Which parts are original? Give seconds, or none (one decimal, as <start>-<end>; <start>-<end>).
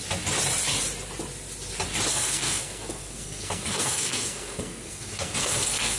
0.0-2.1